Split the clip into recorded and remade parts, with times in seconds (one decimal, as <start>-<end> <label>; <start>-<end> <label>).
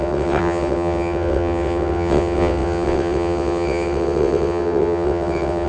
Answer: 0.0-5.7 remade